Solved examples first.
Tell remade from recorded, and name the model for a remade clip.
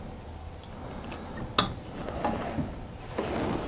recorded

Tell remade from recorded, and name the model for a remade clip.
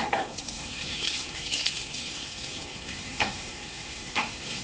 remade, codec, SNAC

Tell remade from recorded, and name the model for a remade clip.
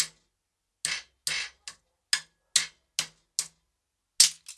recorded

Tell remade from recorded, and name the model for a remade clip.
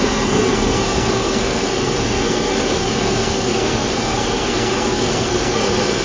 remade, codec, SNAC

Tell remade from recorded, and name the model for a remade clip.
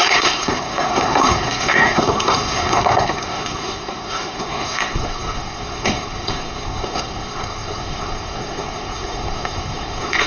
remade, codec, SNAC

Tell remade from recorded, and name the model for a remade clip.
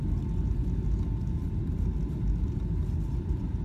recorded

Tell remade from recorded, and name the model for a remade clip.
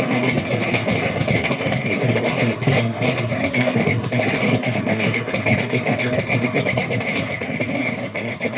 remade, codec, SNAC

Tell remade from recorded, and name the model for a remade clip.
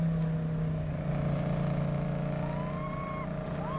recorded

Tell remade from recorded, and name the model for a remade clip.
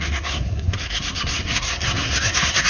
remade, codec, SNAC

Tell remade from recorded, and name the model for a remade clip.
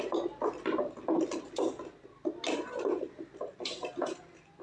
recorded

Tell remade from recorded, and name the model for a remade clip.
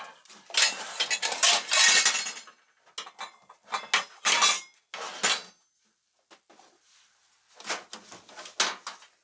recorded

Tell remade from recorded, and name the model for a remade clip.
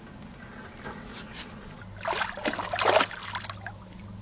recorded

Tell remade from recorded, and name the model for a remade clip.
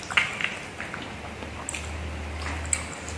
recorded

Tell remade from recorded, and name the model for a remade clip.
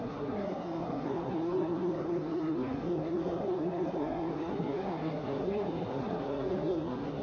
remade, codec, SNAC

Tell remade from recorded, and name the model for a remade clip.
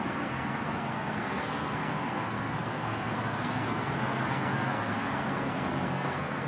remade, codec, SNAC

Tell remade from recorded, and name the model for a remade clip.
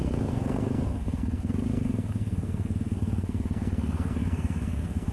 remade, codec, SNAC